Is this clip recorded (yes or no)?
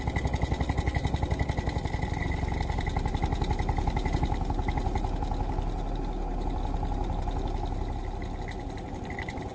yes